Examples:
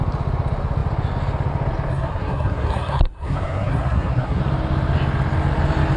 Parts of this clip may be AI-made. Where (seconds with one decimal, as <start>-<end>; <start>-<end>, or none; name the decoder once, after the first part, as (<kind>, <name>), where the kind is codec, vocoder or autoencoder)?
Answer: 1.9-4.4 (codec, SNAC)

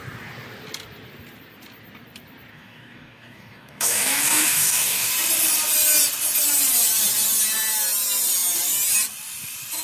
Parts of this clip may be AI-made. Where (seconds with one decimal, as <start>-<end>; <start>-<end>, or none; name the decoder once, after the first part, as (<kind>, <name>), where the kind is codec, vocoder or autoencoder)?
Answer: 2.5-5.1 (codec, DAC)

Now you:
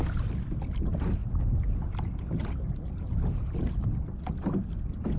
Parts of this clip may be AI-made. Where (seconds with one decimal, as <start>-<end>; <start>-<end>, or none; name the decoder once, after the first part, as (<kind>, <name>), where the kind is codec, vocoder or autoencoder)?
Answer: none

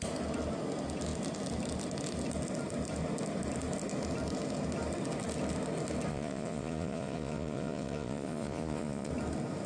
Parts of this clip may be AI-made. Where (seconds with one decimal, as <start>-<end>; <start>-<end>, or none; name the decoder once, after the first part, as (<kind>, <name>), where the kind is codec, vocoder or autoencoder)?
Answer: 6.1-9.1 (vocoder, Vocos)

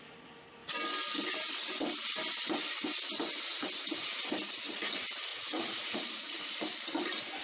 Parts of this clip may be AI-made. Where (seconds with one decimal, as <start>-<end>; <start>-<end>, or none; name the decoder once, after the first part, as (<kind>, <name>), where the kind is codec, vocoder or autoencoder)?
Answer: 5.3-6.5 (vocoder, Vocos)

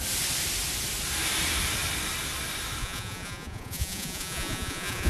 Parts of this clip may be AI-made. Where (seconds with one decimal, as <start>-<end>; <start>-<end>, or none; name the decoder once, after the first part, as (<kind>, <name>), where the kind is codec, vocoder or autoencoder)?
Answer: 2.8-5.1 (vocoder, Vocos)

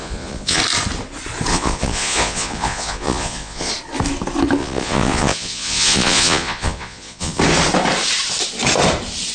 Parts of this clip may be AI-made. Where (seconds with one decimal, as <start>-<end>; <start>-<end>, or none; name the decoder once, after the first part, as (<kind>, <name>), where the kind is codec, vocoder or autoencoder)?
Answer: 0.0-0.6 (vocoder, Vocos); 1.5-3.7; 4.6-7.4